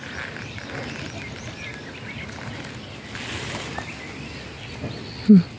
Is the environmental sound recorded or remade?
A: recorded